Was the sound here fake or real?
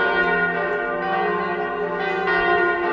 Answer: real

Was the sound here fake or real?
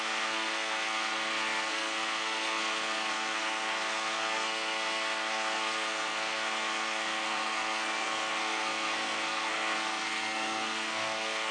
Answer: fake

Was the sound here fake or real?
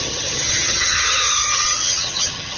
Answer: fake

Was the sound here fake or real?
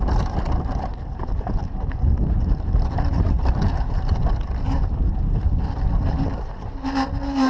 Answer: real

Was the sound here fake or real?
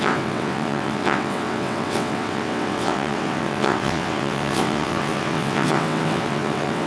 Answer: fake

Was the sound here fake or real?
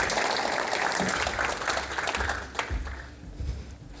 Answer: real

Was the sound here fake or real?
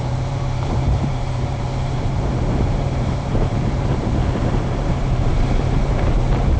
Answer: fake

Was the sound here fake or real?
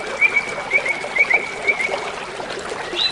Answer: real